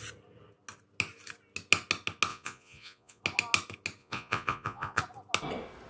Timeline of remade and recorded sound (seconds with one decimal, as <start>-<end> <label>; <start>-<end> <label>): 0.0-2.3 recorded; 2.3-3.2 remade; 3.2-4.0 recorded; 4.0-5.0 remade; 5.0-5.9 recorded